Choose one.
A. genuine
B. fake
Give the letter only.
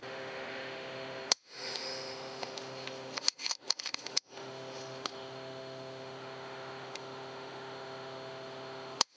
B